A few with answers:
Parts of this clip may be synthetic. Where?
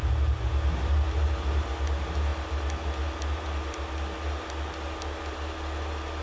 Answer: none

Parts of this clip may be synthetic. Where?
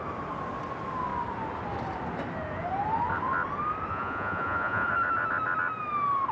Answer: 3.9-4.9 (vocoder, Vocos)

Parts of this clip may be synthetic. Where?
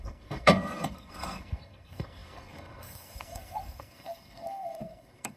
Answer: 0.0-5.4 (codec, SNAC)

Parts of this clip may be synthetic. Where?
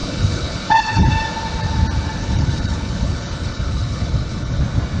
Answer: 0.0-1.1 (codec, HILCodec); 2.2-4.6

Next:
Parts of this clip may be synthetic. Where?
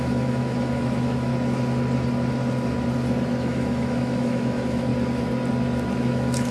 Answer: 0.0-1.3 (autoencoder, DAC-VAE); 3.4-4.9; 6.0-6.5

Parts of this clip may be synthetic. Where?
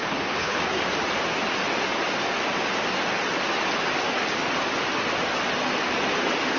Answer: 0.0-0.6 (codec, HILCodec)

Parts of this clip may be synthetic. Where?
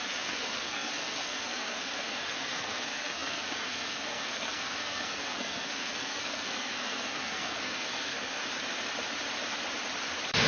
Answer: 0.0-8.4 (codec, SNAC)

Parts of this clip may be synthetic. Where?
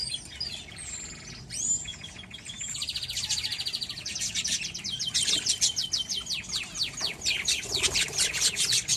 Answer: none